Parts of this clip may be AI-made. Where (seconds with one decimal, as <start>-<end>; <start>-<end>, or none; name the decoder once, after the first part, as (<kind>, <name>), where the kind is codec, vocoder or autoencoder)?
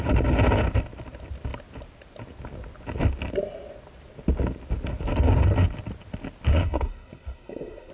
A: 6.5-7.9 (codec, SNAC)